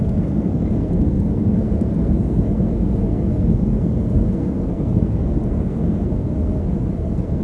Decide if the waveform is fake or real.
fake